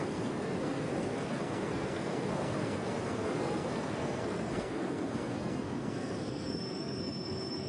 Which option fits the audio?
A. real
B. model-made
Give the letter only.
B